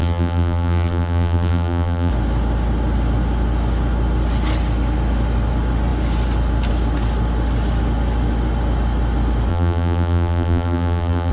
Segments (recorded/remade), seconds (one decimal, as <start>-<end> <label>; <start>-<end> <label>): 0.0-2.1 remade; 2.1-9.5 recorded; 9.5-11.3 remade